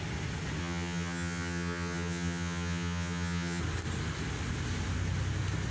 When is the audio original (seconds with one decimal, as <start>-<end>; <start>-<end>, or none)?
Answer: 0.0-0.6; 3.6-5.7